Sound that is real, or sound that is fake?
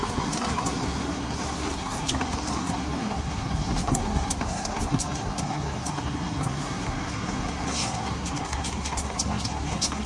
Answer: fake